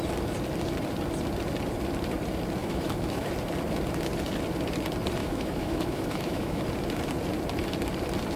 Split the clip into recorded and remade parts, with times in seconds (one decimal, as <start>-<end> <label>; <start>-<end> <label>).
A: 0.0-2.6 recorded; 2.6-3.3 remade; 3.3-5.2 recorded; 5.2-6.6 remade; 6.6-8.4 recorded